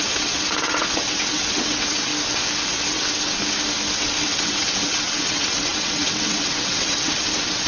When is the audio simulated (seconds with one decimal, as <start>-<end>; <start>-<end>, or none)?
0.0-2.1; 2.7-3.4; 4.0-7.7